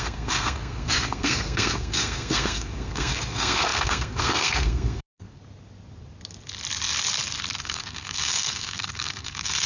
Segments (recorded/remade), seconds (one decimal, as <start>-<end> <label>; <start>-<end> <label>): 0.0-5.4 remade; 5.4-7.6 recorded; 7.6-9.7 remade